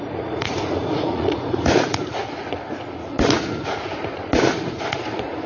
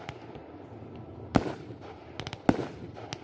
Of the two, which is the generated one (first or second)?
first